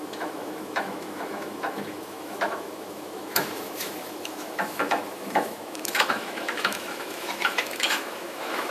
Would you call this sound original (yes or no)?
no